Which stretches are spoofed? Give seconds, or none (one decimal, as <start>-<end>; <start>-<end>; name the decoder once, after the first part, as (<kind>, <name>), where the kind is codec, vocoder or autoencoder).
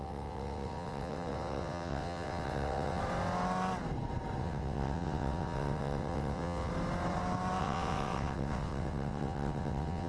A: 0.0-3.0 (vocoder, WaveNeXt); 4.4-6.7; 7.6-10.1